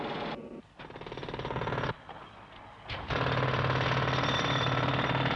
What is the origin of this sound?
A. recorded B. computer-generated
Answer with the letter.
A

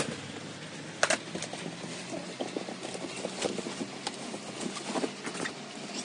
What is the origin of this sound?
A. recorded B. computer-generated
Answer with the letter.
A